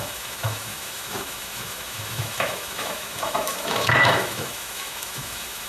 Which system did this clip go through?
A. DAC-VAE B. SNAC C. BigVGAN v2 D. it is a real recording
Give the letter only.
A